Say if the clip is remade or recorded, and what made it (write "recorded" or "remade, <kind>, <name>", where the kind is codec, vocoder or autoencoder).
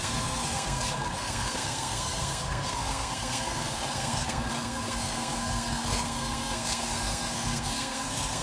remade, codec, SNAC